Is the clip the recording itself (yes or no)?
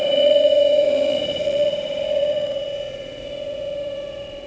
no